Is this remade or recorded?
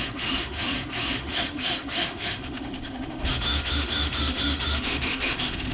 remade